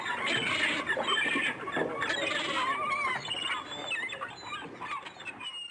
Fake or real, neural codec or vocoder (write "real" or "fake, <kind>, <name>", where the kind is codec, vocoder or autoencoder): real